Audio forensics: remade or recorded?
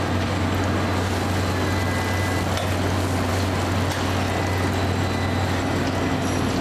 recorded